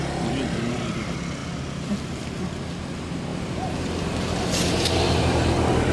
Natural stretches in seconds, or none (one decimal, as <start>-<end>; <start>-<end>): 0.0-3.3; 5.4-5.9